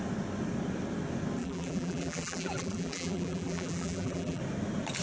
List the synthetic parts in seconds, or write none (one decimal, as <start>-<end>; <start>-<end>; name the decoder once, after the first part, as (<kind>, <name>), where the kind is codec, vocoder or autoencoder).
1.4-4.4 (vocoder, BigVGAN v2)